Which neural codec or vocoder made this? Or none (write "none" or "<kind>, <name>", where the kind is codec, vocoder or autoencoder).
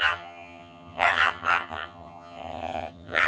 vocoder, HiFi-GAN